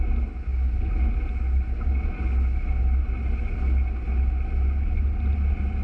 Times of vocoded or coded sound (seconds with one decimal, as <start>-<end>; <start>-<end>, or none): none